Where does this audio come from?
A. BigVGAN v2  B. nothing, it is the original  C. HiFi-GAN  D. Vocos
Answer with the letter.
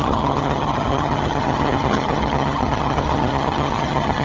C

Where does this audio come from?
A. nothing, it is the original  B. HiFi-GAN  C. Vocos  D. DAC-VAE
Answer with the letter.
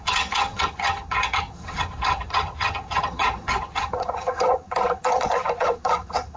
B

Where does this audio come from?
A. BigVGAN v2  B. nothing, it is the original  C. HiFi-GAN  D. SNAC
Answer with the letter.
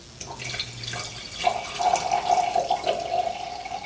B